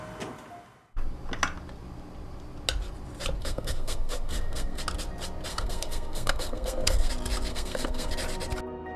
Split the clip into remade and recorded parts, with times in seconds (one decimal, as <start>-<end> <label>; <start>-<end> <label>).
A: 0.0-3.4 recorded; 3.4-4.8 remade; 4.8-5.5 recorded; 5.5-7.1 remade; 7.1-7.5 recorded; 7.5-8.1 remade; 8.1-9.0 recorded